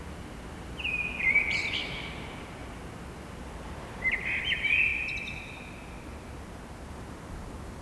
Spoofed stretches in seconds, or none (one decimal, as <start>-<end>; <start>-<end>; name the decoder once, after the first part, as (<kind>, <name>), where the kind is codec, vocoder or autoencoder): none